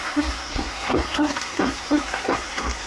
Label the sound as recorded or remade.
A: remade